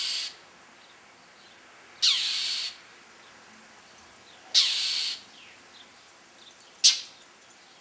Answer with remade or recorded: recorded